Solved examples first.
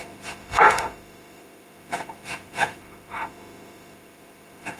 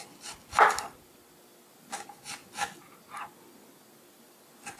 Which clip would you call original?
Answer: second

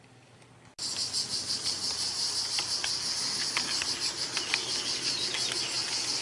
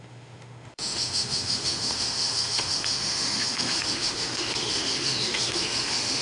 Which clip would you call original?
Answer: first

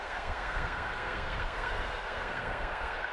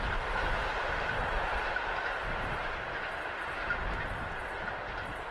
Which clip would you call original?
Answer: second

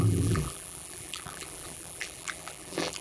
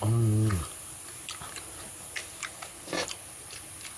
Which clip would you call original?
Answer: second